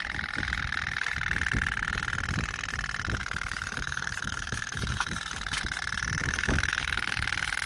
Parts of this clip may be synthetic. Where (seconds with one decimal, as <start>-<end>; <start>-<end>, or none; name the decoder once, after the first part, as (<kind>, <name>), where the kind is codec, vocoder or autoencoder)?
3.2-5.6 (codec, DAC); 6.2-6.7